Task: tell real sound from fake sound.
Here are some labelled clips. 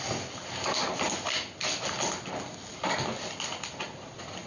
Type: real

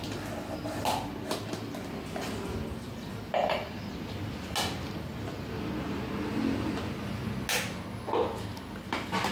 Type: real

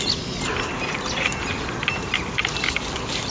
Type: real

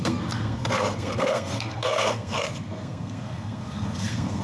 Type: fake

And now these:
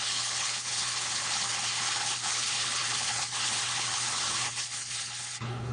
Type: fake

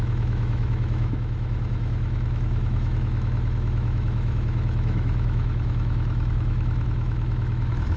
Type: fake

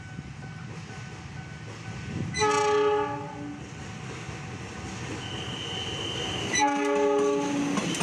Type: real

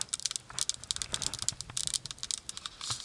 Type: real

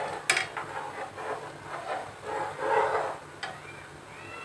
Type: real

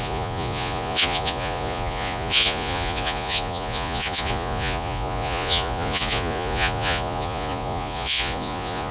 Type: fake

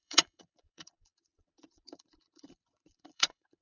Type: fake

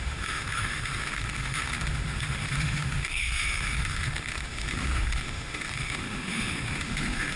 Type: fake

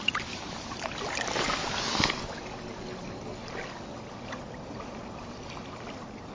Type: real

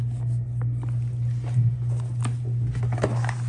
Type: real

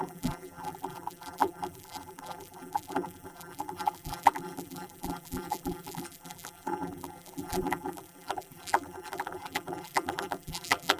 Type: fake